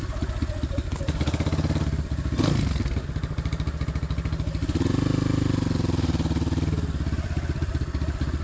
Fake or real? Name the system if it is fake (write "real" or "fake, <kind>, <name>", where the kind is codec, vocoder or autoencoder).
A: real